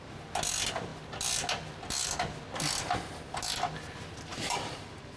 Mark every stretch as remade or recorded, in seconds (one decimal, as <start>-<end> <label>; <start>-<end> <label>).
0.0-4.3 recorded; 4.3-5.2 remade

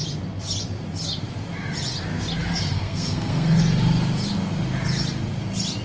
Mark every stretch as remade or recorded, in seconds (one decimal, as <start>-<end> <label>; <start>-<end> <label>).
0.0-2.4 recorded; 2.4-3.6 remade; 3.6-5.8 recorded

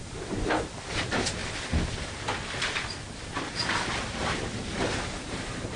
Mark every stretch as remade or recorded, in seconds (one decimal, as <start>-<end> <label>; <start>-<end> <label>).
0.0-1.4 remade; 1.4-4.9 recorded; 4.9-5.8 remade

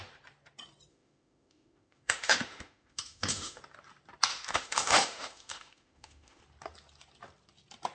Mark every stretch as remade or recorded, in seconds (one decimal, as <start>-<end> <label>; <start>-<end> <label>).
0.0-0.9 recorded; 0.9-3.6 remade; 3.6-4.3 recorded; 4.3-6.4 remade; 6.4-7.9 recorded

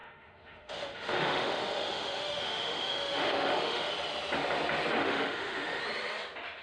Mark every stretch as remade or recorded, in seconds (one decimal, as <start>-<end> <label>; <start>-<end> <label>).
0.0-3.9 remade; 3.9-5.0 recorded; 5.0-5.8 remade; 5.8-6.6 recorded

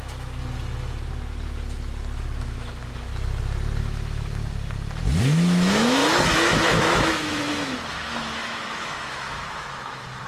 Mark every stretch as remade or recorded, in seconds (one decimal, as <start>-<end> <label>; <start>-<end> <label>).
0.0-0.4 remade; 0.4-2.4 recorded; 2.4-3.1 remade; 3.1-3.8 recorded; 3.8-4.4 remade; 4.4-5.2 recorded; 5.2-10.3 remade